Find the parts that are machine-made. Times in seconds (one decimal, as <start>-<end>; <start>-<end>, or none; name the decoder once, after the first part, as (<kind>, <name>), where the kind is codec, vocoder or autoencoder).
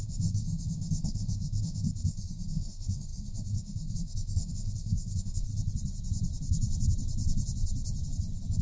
0.0-5.5 (codec, SNAC)